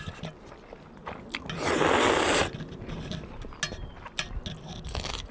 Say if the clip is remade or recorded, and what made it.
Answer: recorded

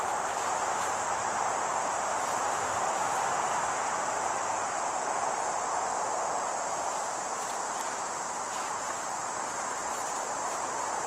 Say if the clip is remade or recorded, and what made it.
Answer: remade, vocoder, BigVGAN v2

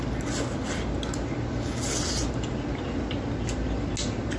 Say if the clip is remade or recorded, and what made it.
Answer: recorded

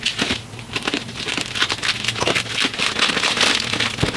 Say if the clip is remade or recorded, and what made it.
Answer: recorded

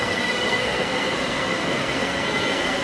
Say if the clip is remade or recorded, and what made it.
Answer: remade, codec, SNAC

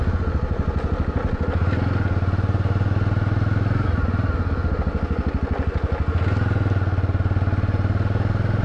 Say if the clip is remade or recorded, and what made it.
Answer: recorded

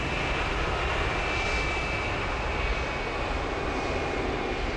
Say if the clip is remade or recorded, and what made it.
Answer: recorded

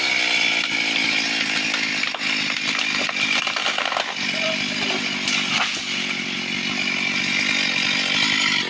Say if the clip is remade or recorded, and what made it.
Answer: recorded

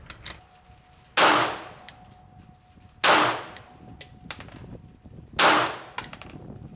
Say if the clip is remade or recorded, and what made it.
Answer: recorded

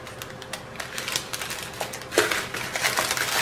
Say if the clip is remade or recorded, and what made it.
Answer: recorded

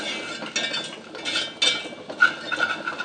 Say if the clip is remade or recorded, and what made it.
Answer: recorded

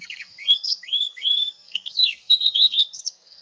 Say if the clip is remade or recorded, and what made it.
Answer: remade, codec, SNAC